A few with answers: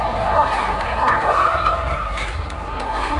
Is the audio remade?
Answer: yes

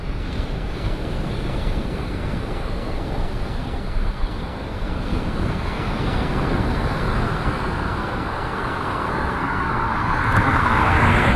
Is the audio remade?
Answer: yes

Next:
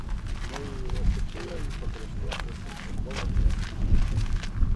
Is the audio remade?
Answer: no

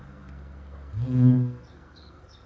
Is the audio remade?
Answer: yes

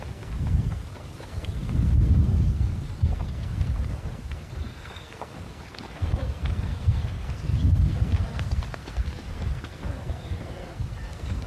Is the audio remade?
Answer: yes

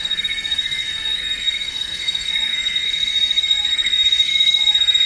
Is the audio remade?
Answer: yes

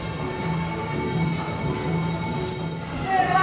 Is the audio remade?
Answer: no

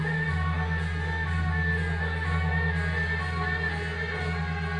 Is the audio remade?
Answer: no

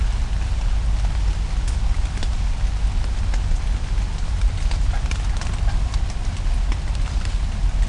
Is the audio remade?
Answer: no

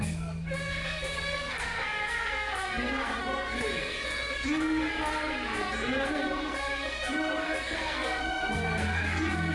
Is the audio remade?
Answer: yes